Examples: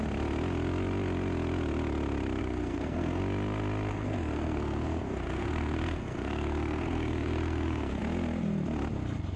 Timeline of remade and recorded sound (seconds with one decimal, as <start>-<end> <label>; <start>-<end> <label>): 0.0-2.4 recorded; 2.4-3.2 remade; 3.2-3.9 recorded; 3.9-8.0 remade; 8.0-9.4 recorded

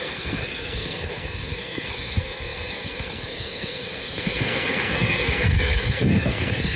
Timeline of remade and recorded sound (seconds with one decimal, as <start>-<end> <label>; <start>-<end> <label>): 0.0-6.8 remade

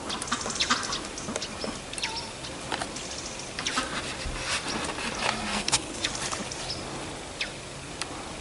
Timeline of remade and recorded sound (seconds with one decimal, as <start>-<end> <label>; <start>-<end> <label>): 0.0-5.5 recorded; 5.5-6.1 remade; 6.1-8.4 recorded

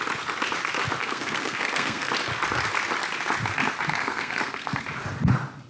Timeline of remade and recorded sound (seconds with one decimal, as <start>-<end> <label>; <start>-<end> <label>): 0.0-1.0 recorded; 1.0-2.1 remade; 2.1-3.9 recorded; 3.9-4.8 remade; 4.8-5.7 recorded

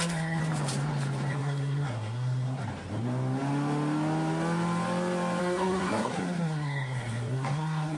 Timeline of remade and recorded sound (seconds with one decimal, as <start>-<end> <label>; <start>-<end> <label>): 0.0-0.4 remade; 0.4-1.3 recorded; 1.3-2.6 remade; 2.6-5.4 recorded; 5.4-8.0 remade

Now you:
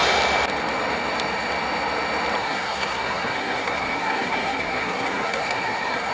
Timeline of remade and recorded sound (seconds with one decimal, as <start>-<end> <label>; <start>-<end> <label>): 0.0-2.4 recorded; 2.4-6.1 remade

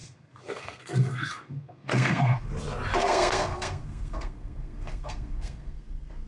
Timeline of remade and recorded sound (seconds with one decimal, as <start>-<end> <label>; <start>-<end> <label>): 0.0-2.5 remade; 2.5-3.0 recorded; 3.0-6.3 remade